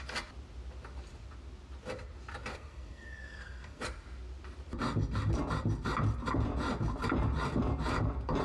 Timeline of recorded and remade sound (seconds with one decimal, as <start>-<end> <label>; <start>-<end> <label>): 0.0-2.5 recorded; 2.5-3.8 remade; 3.8-8.4 recorded